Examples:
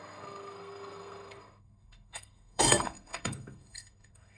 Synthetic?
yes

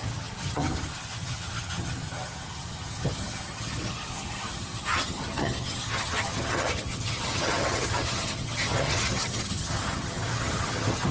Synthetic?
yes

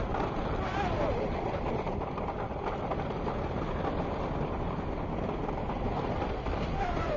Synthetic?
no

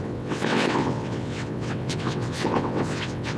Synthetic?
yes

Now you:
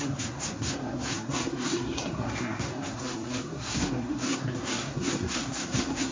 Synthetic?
yes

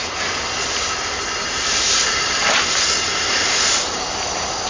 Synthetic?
no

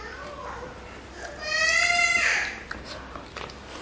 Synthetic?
no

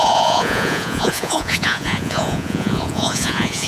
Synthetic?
yes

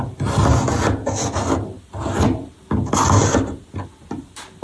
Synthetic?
no